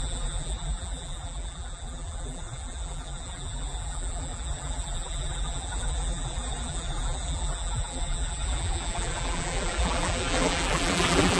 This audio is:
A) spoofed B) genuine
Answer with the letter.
A